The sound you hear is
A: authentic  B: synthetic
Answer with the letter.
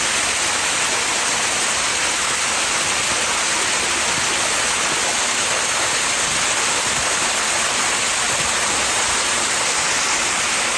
A